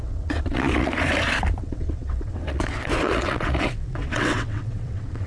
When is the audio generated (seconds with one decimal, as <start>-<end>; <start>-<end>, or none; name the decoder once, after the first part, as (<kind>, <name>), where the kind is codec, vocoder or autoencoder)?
0.0-0.9 (vocoder, WaveNeXt); 1.6-5.3